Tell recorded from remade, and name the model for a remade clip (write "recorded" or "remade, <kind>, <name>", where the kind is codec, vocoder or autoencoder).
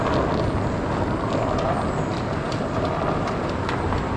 recorded